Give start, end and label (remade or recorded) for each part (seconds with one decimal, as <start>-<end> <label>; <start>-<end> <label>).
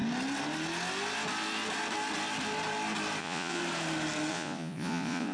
0.0-3.2 recorded; 3.2-3.6 remade; 3.6-4.3 recorded; 4.3-5.3 remade